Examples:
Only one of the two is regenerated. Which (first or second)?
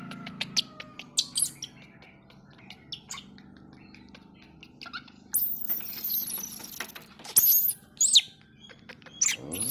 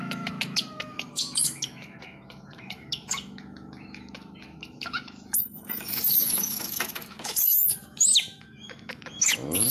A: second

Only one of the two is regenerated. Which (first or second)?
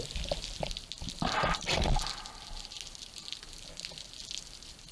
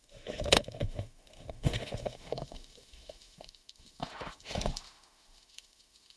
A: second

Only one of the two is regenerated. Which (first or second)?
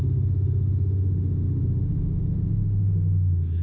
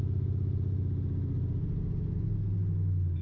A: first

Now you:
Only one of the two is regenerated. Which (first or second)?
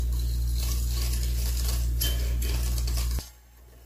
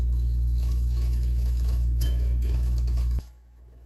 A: second